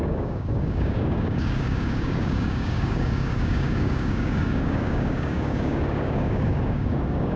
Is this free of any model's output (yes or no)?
no